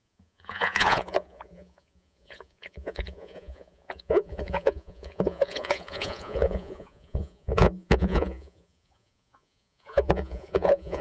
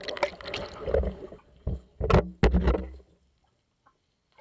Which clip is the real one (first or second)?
second